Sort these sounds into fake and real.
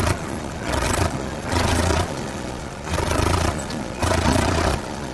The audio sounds fake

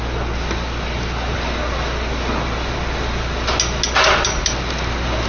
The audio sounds real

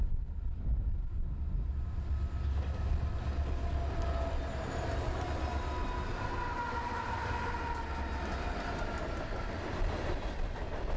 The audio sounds real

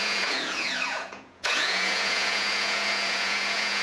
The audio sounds fake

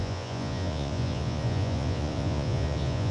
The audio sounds fake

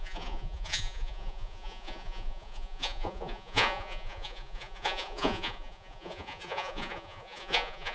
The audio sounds fake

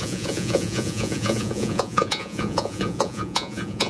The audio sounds fake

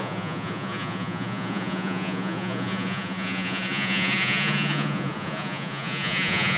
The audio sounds fake